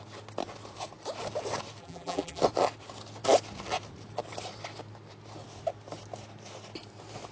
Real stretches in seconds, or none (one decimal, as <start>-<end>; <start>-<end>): 0.0-1.8; 2.4-7.3